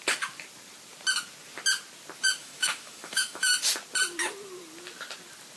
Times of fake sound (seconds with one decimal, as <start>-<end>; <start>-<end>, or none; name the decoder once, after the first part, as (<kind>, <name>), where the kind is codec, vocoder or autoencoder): 2.4-3.5 (autoencoder, DAC-VAE)